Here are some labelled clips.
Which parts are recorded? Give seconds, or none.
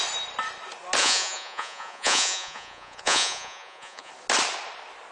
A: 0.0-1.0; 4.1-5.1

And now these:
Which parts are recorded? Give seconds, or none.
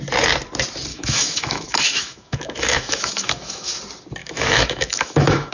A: 0.0-0.9; 3.7-4.2